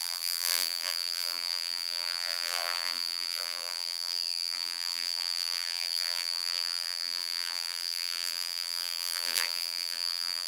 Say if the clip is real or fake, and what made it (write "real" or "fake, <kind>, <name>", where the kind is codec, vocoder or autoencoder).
fake, vocoder, BigVGAN v2